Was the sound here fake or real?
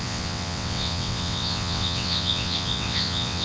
fake